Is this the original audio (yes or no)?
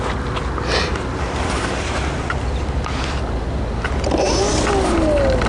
yes